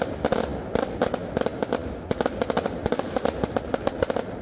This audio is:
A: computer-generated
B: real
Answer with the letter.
B